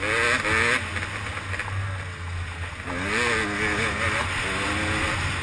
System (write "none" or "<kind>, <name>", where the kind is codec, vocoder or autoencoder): none